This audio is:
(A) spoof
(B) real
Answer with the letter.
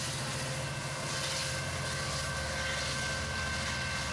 B